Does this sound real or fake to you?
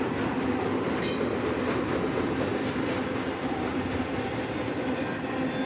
real